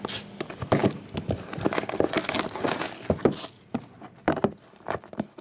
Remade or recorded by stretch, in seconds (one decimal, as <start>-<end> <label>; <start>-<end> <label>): 0.0-5.4 recorded